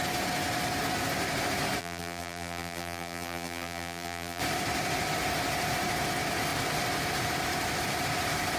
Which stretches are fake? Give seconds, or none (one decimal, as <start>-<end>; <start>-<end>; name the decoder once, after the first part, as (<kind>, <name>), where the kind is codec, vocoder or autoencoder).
1.8-4.4 (vocoder, BigVGAN v2)